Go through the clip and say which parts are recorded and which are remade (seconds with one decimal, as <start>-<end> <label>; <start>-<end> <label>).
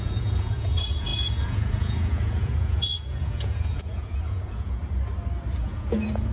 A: 0.0-4.8 remade; 4.8-5.6 recorded; 5.6-6.3 remade